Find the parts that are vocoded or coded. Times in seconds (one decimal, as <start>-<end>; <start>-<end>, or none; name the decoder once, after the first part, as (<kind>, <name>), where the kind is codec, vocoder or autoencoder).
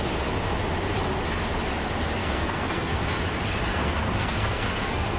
2.2-3.0 (codec, SNAC); 3.7-5.2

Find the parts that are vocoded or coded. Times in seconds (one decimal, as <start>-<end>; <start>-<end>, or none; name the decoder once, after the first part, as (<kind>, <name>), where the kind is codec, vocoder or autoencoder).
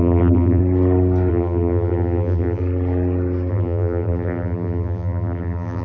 0.0-0.6 (vocoder, BigVGAN v2); 1.3-2.6; 3.5-5.8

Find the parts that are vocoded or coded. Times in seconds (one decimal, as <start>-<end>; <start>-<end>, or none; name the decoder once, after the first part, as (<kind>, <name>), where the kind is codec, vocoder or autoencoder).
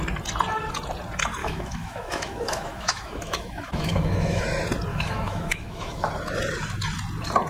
1.4-4.4 (autoencoder, DAC-VAE); 4.9-6.1